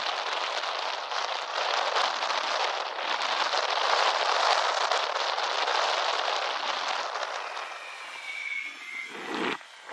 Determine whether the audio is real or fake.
real